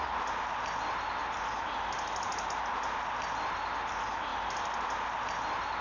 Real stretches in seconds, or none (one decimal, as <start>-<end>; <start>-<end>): 0.0-5.8